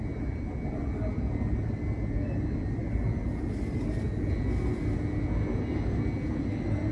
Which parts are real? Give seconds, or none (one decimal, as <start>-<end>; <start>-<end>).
0.0-6.9